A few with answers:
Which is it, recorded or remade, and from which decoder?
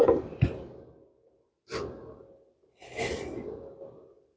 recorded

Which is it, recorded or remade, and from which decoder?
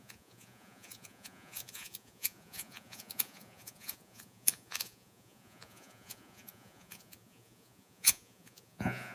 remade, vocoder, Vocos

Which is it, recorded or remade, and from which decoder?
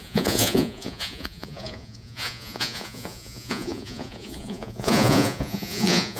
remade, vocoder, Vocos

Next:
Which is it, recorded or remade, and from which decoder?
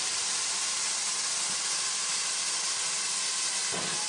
recorded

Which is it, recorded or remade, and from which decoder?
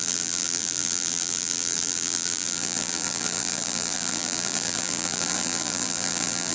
remade, vocoder, BigVGAN v2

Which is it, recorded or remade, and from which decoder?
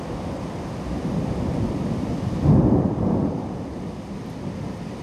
recorded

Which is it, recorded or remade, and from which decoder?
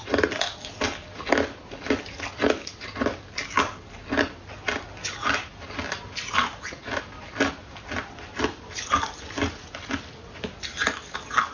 recorded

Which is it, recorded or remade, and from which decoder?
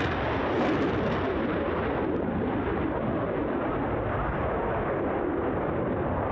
recorded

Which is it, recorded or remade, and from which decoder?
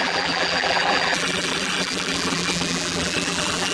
remade, vocoder, BigVGAN v2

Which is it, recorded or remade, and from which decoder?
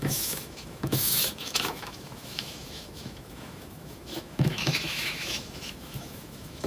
remade, autoencoder, DAC-VAE